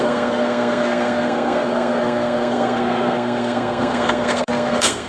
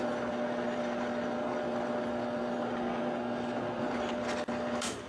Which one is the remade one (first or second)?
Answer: first